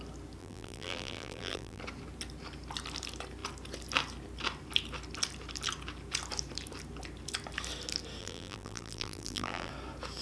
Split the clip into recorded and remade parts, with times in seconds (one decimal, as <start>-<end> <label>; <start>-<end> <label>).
0.0-0.4 recorded; 0.4-1.8 remade; 1.8-8.2 recorded; 8.2-9.7 remade; 9.7-10.2 recorded